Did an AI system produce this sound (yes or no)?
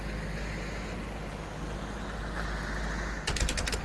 no